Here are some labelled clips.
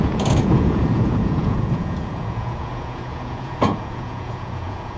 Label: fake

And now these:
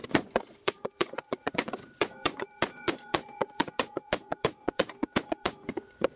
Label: fake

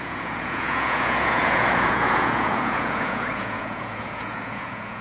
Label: fake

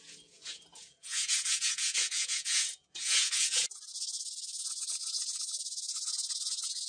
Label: fake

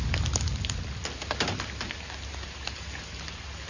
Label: real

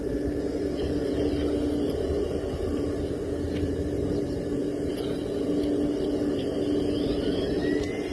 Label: real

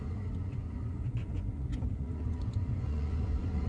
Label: fake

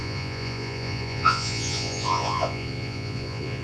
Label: fake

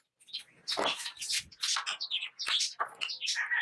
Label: real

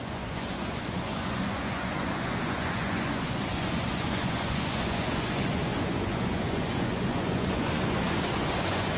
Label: fake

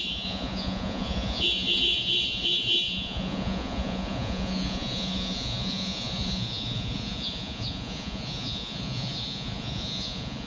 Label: fake